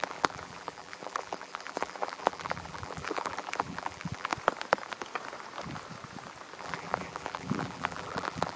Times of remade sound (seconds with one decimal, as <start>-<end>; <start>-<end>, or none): 0.0-4.3; 6.6-8.6